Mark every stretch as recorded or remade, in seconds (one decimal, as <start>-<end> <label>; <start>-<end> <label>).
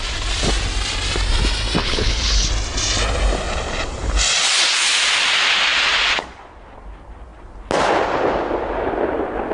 0.0-1.8 recorded; 1.8-2.5 remade; 2.5-9.5 recorded